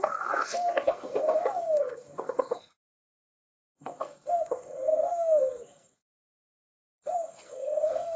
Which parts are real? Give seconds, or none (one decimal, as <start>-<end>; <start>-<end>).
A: none